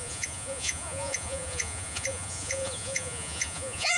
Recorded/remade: remade